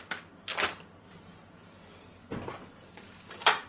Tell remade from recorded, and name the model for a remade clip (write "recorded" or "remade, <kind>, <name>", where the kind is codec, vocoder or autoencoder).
recorded